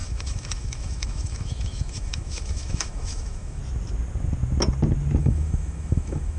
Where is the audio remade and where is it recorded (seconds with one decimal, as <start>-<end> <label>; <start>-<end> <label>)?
0.0-3.6 remade; 3.6-5.2 recorded; 5.2-6.4 remade